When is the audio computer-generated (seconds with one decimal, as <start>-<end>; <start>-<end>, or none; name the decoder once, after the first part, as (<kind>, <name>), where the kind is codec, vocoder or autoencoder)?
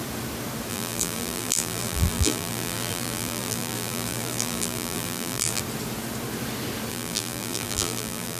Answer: 0.7-5.6 (vocoder, BigVGAN v2); 6.9-8.4